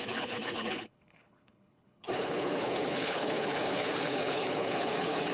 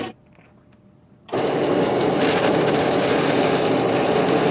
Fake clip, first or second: first